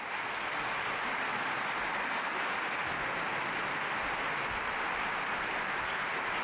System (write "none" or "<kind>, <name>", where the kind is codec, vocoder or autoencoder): none